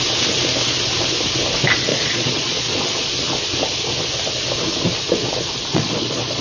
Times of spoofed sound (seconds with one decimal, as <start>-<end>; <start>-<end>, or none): 1.9-3.0; 5.7-6.4